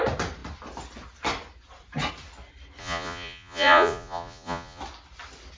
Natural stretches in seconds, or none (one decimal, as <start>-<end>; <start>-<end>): 0.0-2.8; 4.8-5.6